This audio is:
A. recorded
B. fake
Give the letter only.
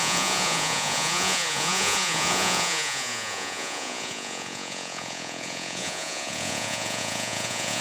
B